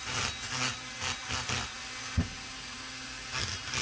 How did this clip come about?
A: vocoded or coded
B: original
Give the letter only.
B